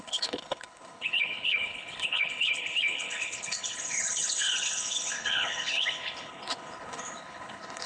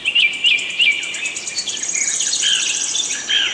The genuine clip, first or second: second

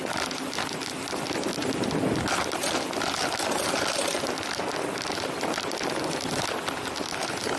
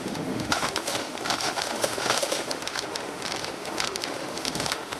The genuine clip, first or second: first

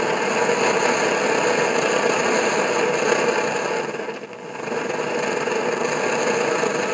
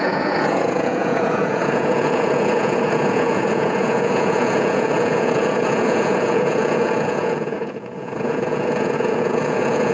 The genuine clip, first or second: first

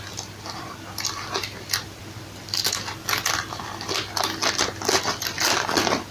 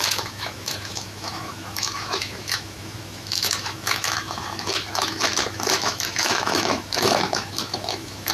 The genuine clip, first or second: first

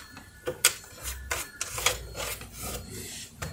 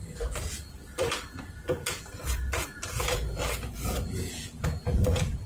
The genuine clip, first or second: first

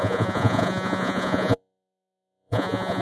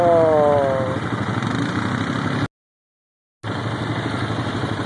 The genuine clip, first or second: second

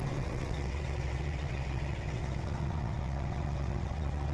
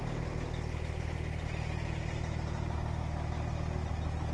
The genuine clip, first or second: second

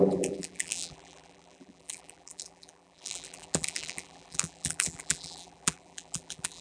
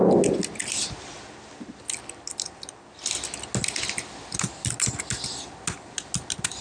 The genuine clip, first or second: second